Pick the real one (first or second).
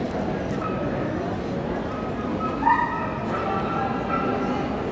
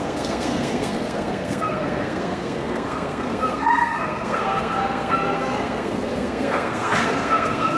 first